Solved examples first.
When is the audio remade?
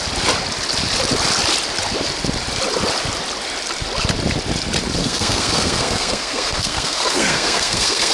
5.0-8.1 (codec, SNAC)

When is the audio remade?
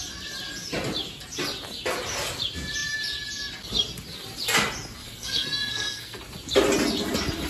5.0-6.2 (codec, SNAC)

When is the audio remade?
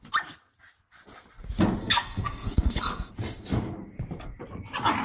1.8-3.1 (codec, SNAC)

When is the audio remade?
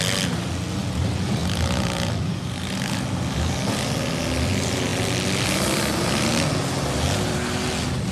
none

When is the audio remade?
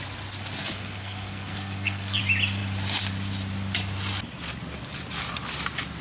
0.6-2.2 (codec, SNAC)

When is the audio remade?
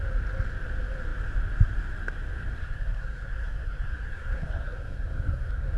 2.6-5.8 (codec, SNAC)